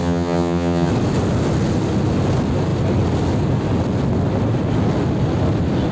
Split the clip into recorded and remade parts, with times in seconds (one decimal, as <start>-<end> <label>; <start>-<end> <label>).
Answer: 0.0-0.9 remade; 0.9-5.9 recorded